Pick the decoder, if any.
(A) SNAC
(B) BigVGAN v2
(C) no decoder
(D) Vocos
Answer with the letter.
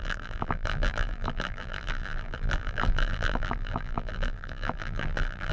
B